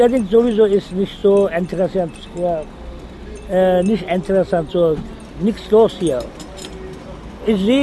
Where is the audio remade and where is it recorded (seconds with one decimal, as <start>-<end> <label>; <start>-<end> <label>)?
0.0-7.8 recorded